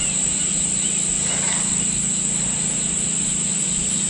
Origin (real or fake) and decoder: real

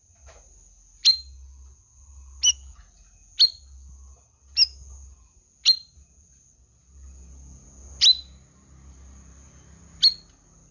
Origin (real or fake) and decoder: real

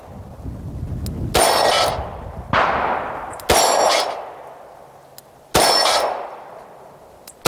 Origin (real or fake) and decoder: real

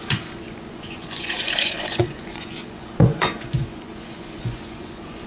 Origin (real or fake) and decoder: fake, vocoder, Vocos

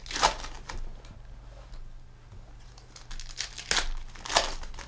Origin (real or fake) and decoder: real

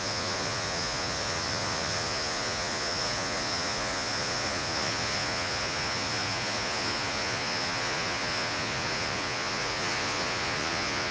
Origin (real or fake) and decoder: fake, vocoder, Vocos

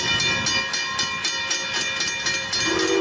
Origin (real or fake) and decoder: real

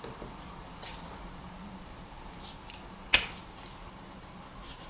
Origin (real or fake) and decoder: fake, vocoder, BigVGAN v2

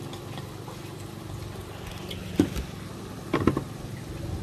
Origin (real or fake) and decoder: real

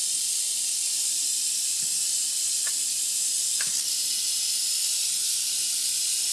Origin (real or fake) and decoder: real